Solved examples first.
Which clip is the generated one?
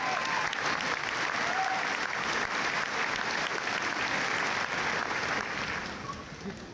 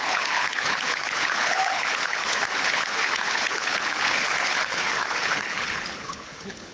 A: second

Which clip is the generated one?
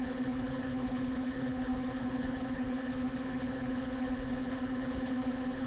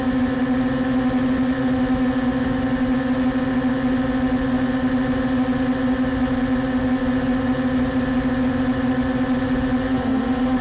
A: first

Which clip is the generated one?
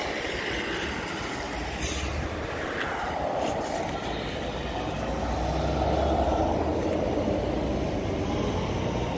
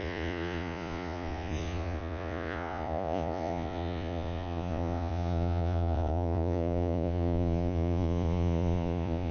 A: second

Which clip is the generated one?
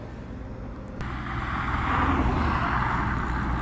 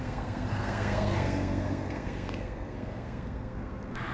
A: second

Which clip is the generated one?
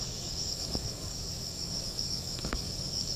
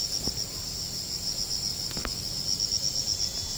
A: first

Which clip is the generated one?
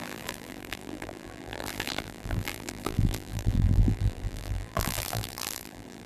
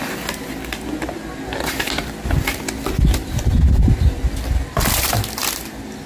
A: first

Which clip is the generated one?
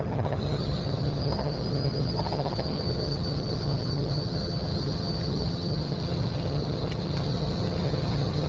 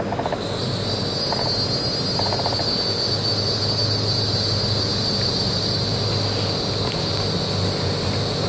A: first